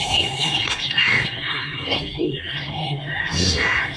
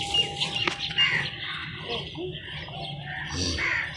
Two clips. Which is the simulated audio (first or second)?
first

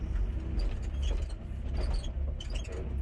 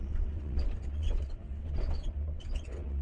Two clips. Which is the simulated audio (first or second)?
second